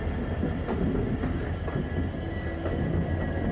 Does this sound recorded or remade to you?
recorded